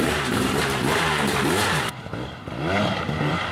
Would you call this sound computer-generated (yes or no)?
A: yes